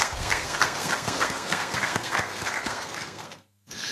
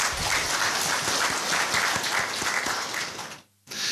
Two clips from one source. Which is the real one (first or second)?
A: second